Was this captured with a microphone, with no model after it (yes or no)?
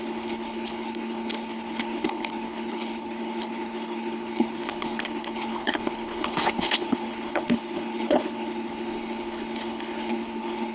no